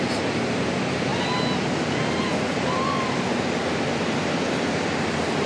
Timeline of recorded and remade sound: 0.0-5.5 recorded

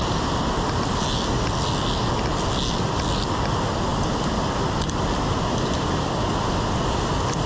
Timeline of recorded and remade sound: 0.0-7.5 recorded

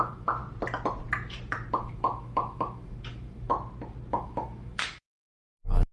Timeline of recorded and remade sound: 0.0-0.4 remade; 0.4-1.7 recorded; 1.7-3.5 remade; 3.5-4.1 recorded; 4.1-5.9 remade

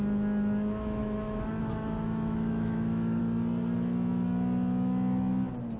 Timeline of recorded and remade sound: 0.0-1.0 recorded; 1.0-3.2 remade; 3.2-5.8 recorded